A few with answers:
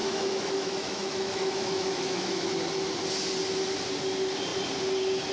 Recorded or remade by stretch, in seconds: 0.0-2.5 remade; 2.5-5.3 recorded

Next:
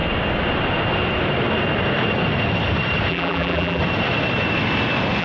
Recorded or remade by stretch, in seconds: 0.0-3.1 recorded; 3.1-3.8 remade; 3.8-5.2 recorded

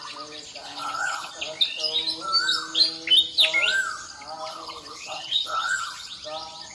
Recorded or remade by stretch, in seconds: 0.0-0.6 recorded; 0.6-1.3 remade; 1.3-4.5 recorded; 4.5-6.1 remade; 6.1-6.7 recorded